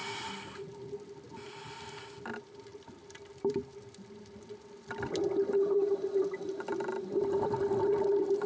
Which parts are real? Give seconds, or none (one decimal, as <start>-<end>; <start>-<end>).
none